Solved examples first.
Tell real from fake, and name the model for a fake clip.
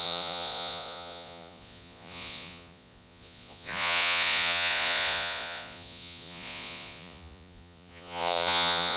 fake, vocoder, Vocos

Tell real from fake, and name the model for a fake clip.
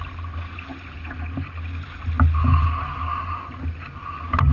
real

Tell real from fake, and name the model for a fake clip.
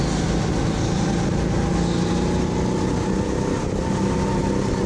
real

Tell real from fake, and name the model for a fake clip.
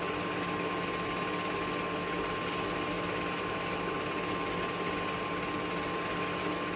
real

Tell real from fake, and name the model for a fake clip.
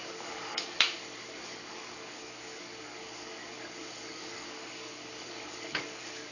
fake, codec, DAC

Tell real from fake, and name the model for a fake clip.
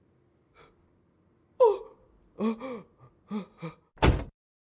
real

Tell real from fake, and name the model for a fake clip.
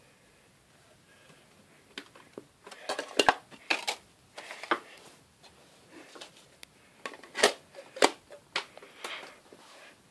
real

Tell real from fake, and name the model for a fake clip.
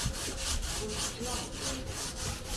real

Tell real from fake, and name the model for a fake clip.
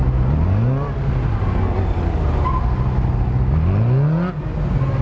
real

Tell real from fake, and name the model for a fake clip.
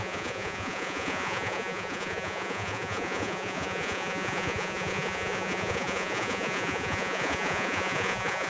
fake, vocoder, Vocos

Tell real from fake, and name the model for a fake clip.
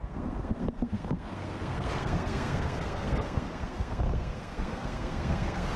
fake, codec, SNAC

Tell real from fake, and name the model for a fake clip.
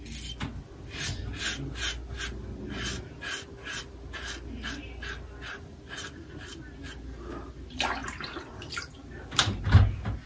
real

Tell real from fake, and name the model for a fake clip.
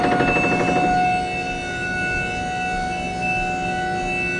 real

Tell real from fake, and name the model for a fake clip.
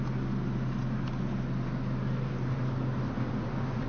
real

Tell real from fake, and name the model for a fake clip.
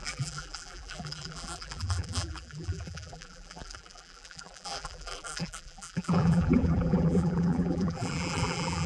fake, vocoder, BigVGAN v2